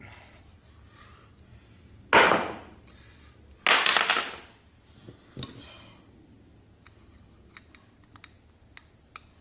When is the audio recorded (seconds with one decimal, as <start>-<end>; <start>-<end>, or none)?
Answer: 0.0-9.4